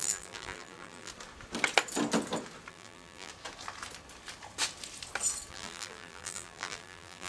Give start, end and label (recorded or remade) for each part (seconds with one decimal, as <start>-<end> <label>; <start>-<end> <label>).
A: 0.0-1.1 remade; 1.1-2.7 recorded; 2.7-3.3 remade; 3.3-5.5 recorded; 5.5-7.3 remade